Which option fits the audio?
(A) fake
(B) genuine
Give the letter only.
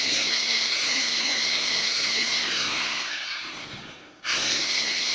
A